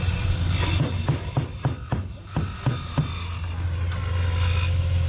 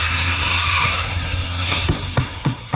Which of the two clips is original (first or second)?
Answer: first